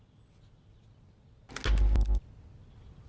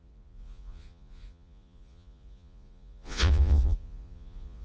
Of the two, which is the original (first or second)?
first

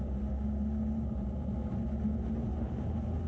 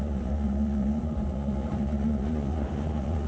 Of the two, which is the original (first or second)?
first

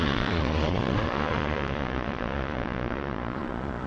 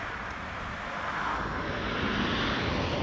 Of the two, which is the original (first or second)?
second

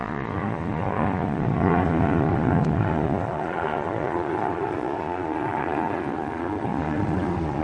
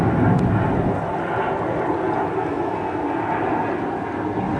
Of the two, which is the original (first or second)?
second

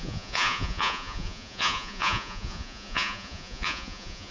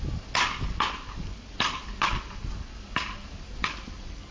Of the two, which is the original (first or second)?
second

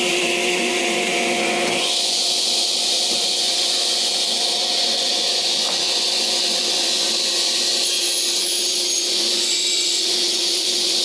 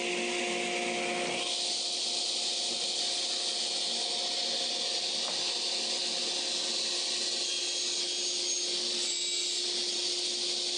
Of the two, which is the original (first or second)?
second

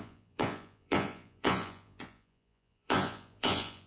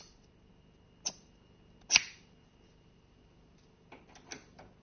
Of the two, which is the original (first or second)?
second